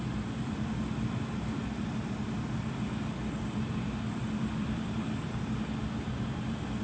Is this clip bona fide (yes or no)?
no